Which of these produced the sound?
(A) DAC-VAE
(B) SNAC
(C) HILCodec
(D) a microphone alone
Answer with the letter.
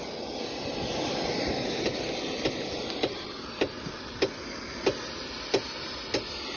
D